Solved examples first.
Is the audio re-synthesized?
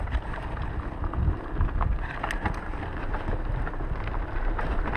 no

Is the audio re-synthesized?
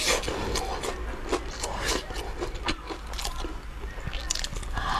no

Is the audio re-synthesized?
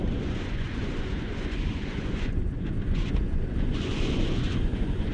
yes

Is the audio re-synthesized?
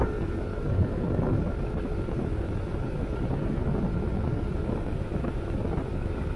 no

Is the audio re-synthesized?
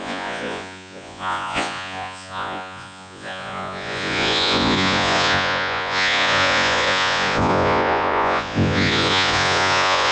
yes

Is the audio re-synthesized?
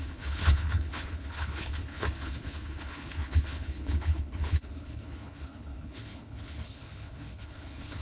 yes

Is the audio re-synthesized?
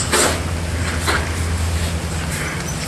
no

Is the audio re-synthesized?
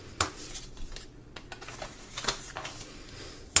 no